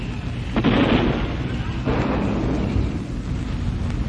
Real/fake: real